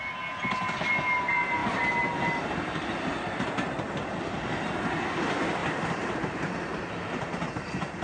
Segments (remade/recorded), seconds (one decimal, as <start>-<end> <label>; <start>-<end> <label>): 0.0-5.6 recorded; 5.6-6.5 remade; 6.5-8.0 recorded